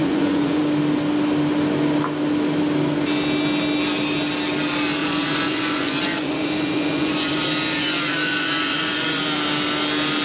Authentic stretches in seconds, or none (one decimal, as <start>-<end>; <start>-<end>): 0.6-5.0; 9.2-10.2

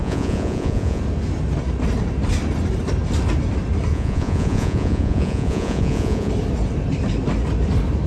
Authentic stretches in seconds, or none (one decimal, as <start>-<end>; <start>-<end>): 1.0-3.9; 6.3-8.1